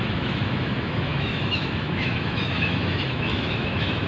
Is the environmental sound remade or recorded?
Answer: remade